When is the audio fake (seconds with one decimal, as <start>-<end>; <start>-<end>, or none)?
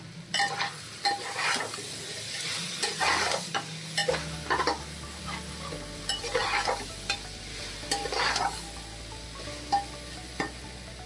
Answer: none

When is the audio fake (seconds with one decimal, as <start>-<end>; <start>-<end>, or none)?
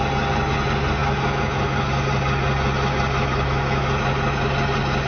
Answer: none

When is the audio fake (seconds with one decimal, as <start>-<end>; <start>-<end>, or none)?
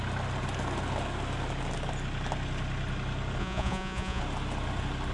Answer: 3.4-4.2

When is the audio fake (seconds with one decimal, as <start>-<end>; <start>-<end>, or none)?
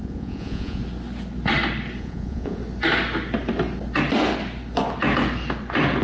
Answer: 0.0-0.8; 2.0-2.6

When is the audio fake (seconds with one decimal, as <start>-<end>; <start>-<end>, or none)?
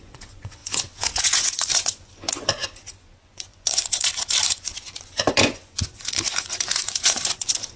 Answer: 0.0-7.8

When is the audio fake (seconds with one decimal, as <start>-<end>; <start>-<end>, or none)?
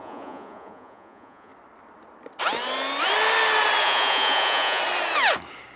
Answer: 0.0-1.5; 3.8-4.8